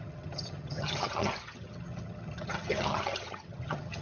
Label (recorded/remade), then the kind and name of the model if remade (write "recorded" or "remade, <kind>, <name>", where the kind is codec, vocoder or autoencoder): remade, vocoder, HiFi-GAN